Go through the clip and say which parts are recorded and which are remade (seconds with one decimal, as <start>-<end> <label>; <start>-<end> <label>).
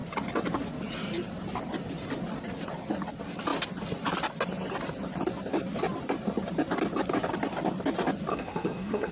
0.0-8.3 recorded; 8.3-9.1 remade